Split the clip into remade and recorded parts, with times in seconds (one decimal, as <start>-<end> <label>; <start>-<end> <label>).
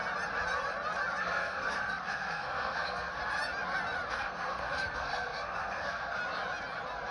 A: 0.0-1.2 recorded; 1.2-3.2 remade; 3.2-4.1 recorded; 4.1-6.2 remade; 6.2-7.1 recorded